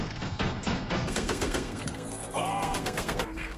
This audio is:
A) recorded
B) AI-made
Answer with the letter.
B